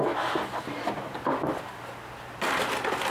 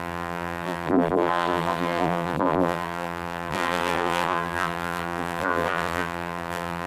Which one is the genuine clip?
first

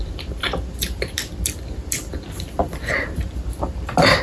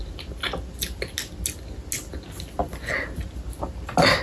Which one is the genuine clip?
second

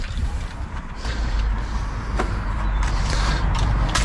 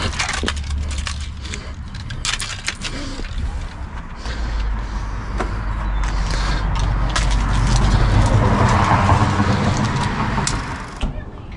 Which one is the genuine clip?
second